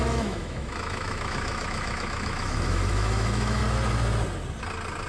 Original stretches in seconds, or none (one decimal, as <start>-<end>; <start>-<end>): 3.6-5.1